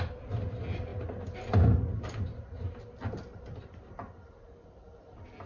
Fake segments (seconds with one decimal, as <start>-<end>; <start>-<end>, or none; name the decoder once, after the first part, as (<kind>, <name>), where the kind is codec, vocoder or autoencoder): none